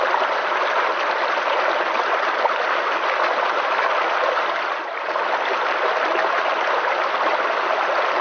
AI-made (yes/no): no